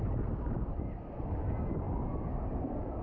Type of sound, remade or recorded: recorded